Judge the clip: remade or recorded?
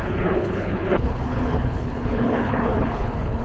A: remade